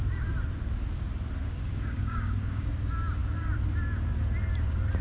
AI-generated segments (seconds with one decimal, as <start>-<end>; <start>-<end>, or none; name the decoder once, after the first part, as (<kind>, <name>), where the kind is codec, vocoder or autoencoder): 1.4-2.7 (codec, DAC)